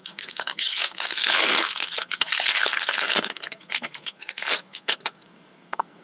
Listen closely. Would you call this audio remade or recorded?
remade